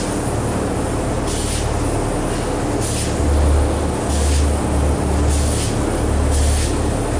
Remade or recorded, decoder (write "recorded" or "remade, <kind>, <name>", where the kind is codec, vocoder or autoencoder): recorded